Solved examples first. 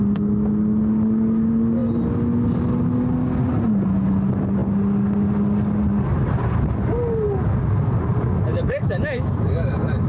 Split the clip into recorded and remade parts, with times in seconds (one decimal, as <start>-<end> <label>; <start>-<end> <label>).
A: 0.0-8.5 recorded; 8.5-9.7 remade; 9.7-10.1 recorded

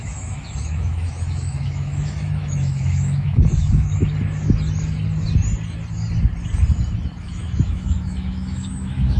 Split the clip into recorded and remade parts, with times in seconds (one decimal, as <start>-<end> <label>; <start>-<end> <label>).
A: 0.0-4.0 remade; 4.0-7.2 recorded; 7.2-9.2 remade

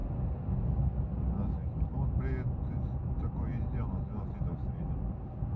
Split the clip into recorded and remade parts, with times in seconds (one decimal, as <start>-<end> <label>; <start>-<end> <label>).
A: 0.0-5.6 recorded

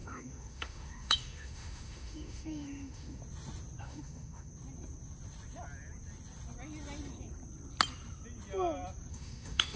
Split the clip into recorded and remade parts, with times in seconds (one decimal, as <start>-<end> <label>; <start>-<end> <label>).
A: 0.0-3.2 remade; 3.2-3.8 recorded; 3.8-4.5 remade; 4.5-9.1 recorded; 9.1-9.8 remade

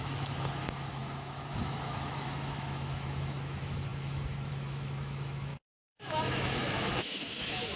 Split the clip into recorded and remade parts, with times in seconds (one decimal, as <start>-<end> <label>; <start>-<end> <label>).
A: 0.0-7.8 remade